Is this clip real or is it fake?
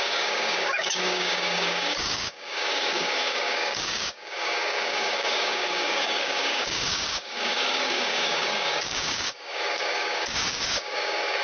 fake